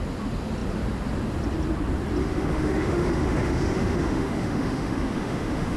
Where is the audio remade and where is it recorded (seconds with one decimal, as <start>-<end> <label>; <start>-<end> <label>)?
0.0-2.2 recorded; 2.2-5.8 remade